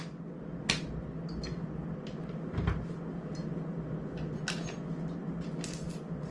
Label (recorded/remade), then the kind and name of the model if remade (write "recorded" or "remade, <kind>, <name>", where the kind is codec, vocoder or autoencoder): recorded